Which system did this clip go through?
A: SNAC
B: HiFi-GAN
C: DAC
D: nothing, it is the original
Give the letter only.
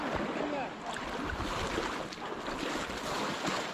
D